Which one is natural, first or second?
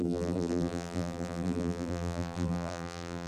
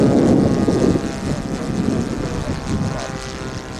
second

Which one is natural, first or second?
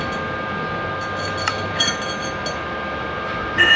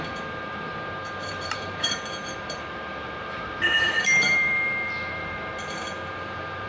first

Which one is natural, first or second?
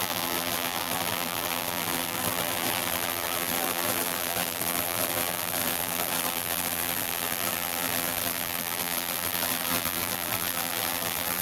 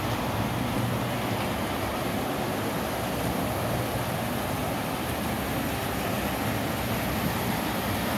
second